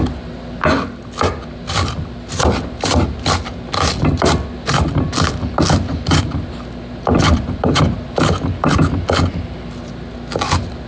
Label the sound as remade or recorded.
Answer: recorded